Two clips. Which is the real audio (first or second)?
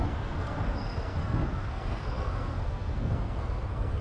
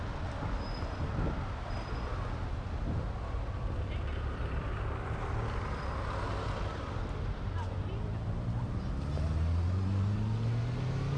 second